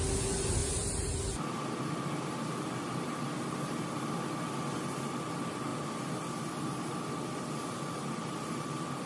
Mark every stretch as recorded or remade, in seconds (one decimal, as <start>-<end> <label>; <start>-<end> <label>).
0.0-9.1 recorded